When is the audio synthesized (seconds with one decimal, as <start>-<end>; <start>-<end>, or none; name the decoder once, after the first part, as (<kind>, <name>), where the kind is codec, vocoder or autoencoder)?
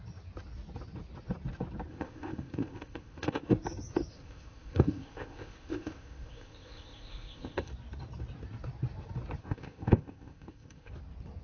1.9-3.5 (codec, ZipCodec); 4.1-7.7; 9.4-10.9